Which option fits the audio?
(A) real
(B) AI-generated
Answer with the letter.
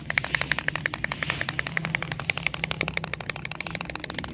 A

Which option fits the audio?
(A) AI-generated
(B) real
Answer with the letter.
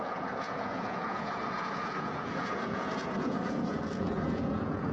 A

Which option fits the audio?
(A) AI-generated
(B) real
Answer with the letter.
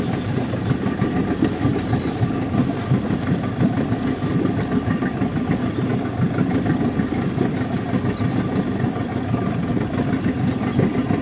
B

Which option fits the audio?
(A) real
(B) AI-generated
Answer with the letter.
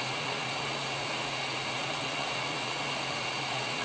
B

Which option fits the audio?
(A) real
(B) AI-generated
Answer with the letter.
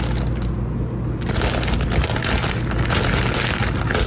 A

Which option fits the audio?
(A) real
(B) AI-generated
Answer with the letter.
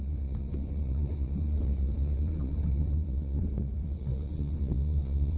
B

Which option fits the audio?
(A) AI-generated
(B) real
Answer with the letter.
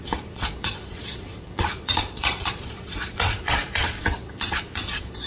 A